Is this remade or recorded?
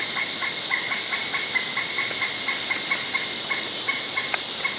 recorded